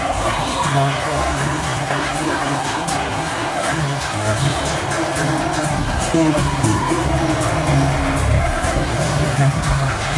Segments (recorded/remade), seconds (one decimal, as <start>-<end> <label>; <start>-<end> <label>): 0.0-4.6 remade; 4.6-5.6 recorded; 5.6-7.1 remade; 7.1-8.4 recorded; 8.4-10.2 remade